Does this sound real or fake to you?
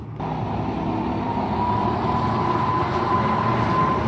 real